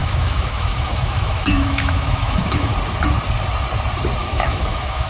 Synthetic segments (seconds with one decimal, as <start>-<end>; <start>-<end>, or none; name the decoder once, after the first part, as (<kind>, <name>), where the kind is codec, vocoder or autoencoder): 0.0-2.7 (autoencoder, DAC-VAE); 4.2-5.1